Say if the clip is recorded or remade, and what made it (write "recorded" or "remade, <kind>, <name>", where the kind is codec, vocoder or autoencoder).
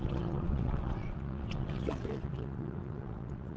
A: remade, vocoder, WaveNeXt